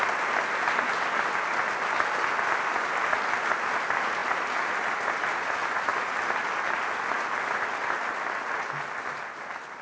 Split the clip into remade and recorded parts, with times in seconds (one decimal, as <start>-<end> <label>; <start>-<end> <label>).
0.0-9.8 recorded